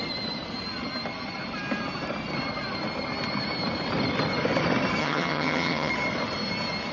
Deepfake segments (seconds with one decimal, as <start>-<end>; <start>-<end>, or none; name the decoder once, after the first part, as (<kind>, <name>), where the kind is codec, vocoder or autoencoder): 5.0-5.9 (vocoder, HiFi-GAN)

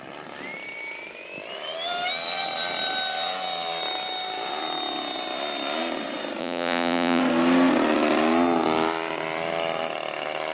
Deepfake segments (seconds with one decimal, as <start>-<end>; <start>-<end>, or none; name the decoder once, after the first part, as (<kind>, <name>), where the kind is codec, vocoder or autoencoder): 6.4-7.2 (vocoder, Vocos)